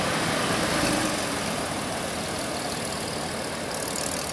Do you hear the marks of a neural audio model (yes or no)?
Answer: no